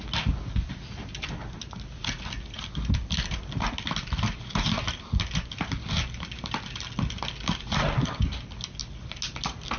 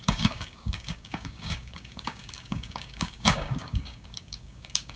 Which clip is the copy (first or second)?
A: second